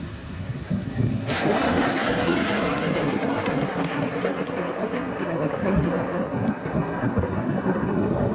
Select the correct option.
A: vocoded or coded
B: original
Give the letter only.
A